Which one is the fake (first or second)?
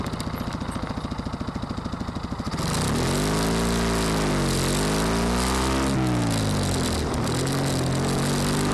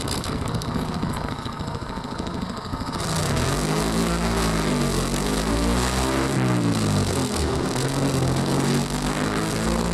second